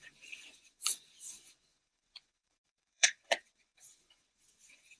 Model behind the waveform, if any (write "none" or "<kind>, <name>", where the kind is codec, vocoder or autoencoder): vocoder, Vocos